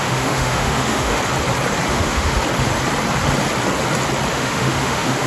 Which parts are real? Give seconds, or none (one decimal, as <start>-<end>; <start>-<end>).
1.2-1.9; 2.4-4.3